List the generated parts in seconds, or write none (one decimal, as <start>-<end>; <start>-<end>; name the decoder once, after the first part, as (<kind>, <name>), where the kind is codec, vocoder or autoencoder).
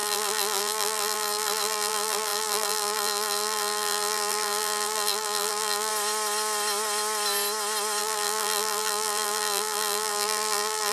0.0-5.9 (vocoder, BigVGAN v2); 8.0-10.9